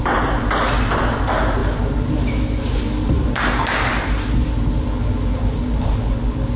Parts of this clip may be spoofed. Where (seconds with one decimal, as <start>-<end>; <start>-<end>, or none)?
none